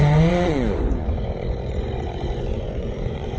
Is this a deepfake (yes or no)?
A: yes